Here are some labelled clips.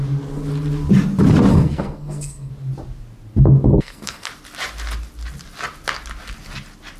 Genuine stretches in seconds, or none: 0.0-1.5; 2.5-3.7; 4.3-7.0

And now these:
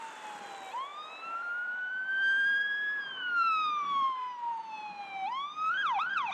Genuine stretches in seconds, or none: 0.0-0.9; 4.7-6.3

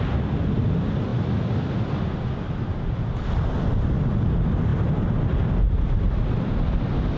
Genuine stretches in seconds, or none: 0.0-7.2

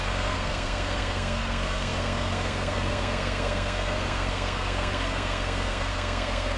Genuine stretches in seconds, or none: none